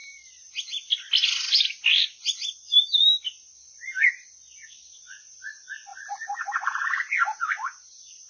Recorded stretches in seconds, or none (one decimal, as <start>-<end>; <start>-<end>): 0.0-8.3